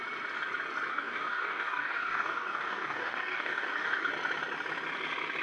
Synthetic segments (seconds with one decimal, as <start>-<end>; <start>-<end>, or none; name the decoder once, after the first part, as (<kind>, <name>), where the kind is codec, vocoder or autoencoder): 0.9-4.1 (codec, DAC)